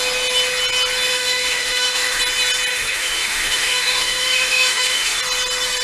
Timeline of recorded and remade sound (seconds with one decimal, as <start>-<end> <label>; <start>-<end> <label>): 0.0-1.1 recorded; 1.1-2.2 remade; 2.2-2.7 recorded; 2.7-5.2 remade; 5.2-5.8 recorded